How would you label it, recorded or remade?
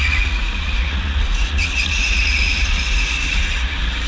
remade